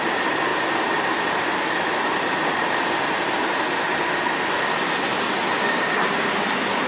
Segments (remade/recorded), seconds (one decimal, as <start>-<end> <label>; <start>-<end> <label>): 0.0-5.6 recorded; 5.6-6.3 remade; 6.3-6.9 recorded

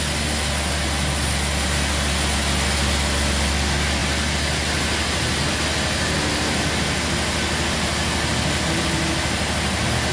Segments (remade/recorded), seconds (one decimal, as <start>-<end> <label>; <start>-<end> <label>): 0.0-10.1 recorded

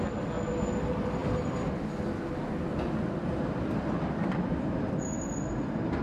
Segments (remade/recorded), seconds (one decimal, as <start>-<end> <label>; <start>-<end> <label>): 0.0-6.0 recorded

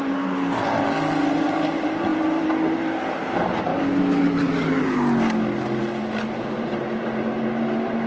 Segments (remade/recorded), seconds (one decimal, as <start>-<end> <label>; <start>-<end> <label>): 0.0-3.7 recorded; 3.7-5.8 remade; 5.8-8.1 recorded

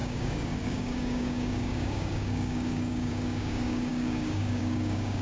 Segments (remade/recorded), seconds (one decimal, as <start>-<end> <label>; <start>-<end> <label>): 0.0-5.2 remade

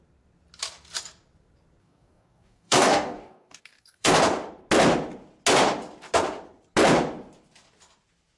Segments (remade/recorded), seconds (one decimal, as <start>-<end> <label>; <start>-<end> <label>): 0.0-1.8 recorded; 1.8-4.2 remade; 4.2-8.4 recorded